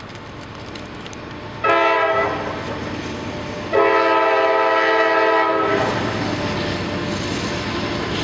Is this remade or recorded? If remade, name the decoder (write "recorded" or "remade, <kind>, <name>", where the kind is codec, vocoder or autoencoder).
recorded